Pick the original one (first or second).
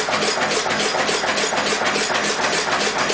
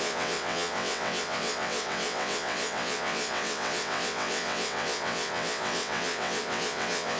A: first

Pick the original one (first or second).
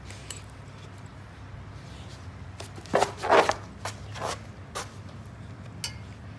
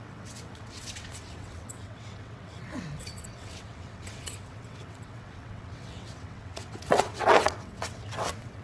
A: first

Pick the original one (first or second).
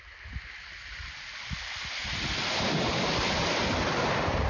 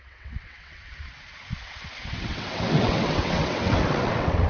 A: first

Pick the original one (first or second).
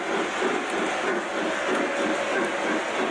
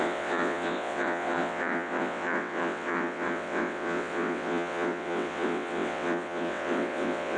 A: first